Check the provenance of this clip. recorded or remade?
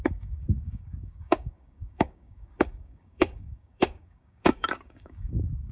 remade